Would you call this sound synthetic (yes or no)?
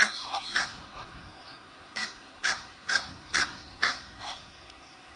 yes